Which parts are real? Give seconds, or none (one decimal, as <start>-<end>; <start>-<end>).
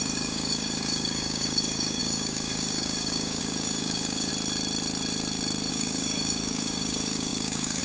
4.3-5.7